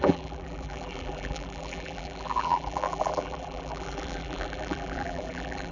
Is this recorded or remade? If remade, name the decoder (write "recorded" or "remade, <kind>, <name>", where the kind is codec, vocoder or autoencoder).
remade, vocoder, BigVGAN v2